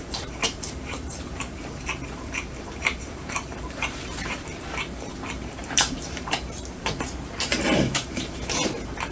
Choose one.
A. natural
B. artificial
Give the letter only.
B